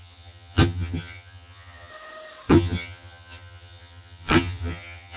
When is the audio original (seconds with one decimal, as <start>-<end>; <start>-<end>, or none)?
1.9-2.5